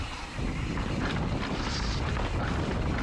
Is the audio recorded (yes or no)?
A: yes